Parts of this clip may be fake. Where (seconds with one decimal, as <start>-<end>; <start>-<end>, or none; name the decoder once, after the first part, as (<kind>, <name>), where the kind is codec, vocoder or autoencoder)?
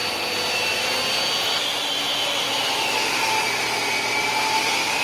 2.6-3.2 (vocoder, BigVGAN v2)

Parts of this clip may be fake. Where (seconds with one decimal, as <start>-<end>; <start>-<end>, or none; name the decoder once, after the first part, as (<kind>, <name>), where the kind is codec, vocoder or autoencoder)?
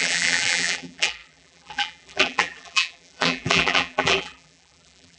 0.0-5.2 (vocoder, BigVGAN v2)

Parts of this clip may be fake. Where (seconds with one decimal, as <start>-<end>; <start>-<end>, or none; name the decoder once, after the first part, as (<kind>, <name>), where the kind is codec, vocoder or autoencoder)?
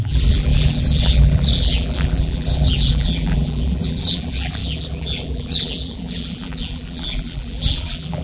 0.0-8.2 (vocoder, BigVGAN v2)